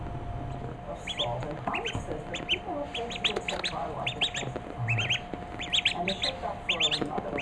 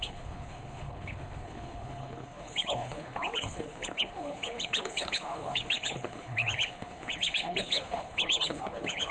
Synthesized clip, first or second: second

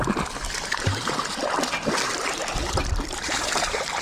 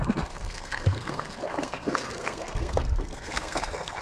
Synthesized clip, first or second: second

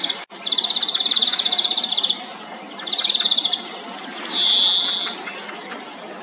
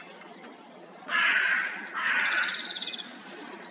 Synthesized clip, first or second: second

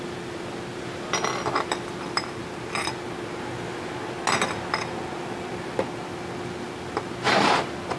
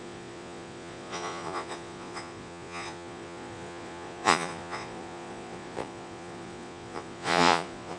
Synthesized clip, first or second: second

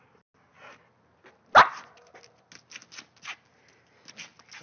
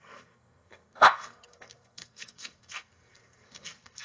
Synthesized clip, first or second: second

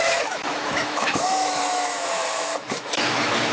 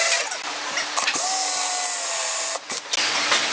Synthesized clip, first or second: first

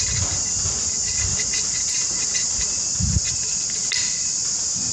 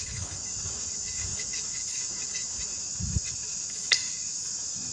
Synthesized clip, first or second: second